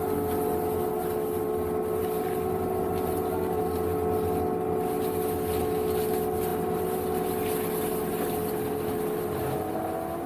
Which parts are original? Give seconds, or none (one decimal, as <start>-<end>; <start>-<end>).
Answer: 0.0-10.3